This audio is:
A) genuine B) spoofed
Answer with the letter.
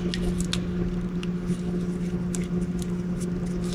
A